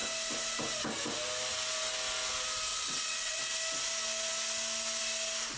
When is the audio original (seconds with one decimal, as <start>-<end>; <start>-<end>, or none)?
0.0-2.7; 3.4-5.6